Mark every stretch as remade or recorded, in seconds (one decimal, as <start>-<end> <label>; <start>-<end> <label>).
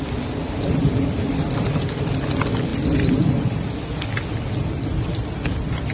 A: 0.0-5.9 recorded